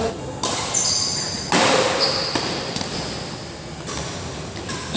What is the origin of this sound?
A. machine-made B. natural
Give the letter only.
B